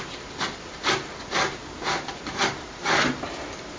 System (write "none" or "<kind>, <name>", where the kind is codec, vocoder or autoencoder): none